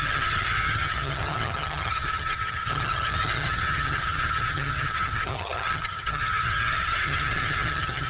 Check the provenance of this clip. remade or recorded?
remade